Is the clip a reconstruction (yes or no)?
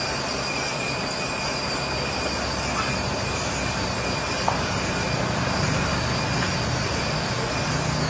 no